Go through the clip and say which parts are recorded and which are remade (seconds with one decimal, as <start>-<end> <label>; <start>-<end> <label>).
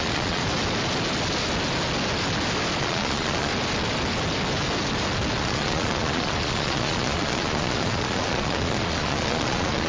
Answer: 0.0-0.4 remade; 0.4-2.8 recorded; 2.8-3.5 remade; 3.5-5.4 recorded; 5.4-9.9 remade